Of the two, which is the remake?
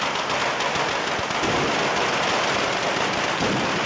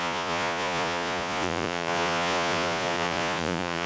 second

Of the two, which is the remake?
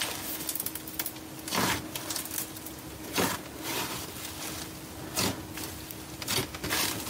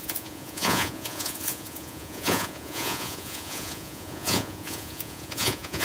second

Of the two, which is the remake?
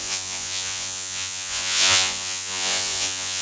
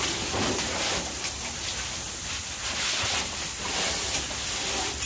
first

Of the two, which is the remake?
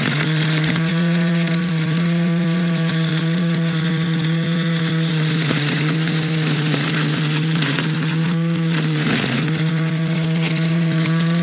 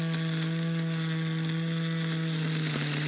first